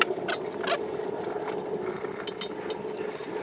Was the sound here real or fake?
real